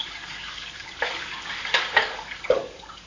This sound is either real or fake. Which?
fake